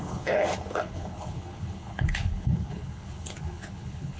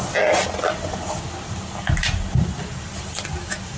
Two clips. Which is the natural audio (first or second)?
second